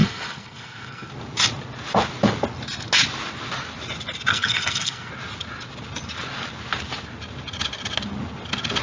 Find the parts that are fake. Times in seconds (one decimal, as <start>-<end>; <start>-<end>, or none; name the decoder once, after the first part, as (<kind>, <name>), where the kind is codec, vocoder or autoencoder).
0.0-1.1 (codec, SNAC); 4.3-5.1